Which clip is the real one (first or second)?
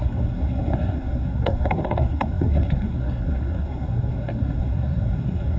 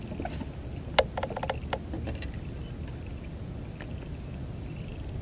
second